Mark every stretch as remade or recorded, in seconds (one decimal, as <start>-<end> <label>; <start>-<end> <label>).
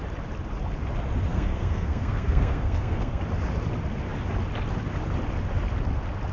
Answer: 0.0-1.3 recorded; 1.3-3.2 remade; 3.2-6.3 recorded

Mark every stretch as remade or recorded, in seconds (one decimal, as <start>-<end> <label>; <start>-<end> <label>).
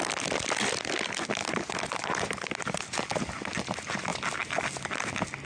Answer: 0.0-5.4 recorded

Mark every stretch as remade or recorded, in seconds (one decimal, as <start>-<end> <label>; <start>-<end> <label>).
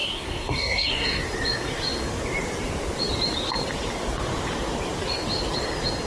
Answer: 0.0-1.2 remade; 1.2-6.1 recorded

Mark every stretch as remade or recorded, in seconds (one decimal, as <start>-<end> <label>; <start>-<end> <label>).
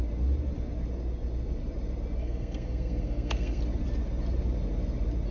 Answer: 0.0-2.2 recorded; 2.2-3.6 remade; 3.6-5.3 recorded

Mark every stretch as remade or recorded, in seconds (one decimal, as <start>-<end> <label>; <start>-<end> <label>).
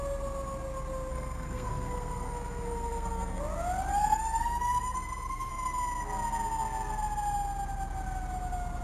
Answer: 0.0-1.1 recorded; 1.1-3.4 remade; 3.4-3.9 recorded; 3.9-5.5 remade; 5.5-8.8 recorded